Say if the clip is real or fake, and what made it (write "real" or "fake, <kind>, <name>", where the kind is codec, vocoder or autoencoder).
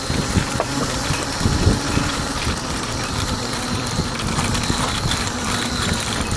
fake, vocoder, BigVGAN v2